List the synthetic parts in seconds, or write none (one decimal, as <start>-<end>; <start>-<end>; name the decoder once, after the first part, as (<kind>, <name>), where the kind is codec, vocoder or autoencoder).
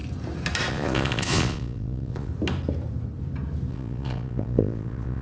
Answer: 0.7-2.3 (vocoder, Vocos); 3.7-5.2